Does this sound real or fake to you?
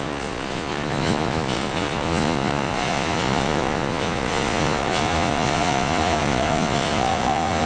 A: fake